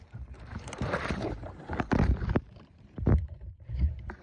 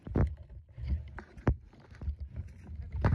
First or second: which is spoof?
first